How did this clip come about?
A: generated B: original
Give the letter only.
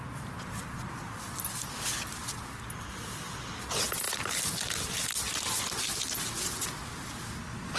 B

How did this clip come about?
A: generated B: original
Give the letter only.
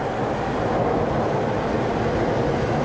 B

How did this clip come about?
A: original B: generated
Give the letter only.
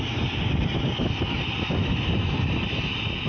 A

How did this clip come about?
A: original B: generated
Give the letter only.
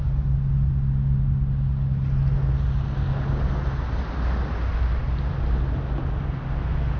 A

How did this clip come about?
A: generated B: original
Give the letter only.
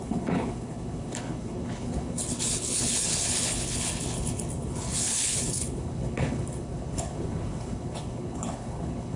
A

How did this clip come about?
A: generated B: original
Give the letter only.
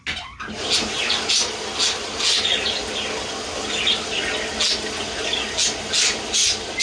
B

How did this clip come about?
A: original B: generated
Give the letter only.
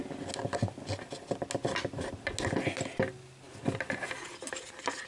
A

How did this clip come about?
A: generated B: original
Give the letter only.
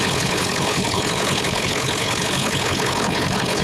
A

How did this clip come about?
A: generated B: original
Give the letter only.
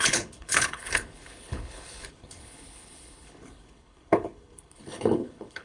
A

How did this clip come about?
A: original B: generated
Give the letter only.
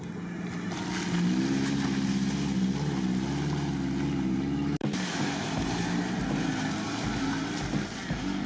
A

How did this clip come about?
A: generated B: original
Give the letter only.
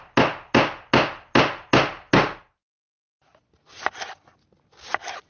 B